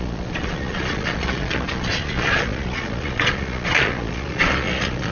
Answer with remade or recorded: remade